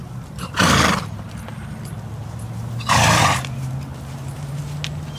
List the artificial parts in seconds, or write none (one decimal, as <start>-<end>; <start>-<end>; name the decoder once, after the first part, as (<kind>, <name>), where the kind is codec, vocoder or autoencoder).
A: 0.0-0.5 (vocoder, BigVGAN v2); 2.2-4.6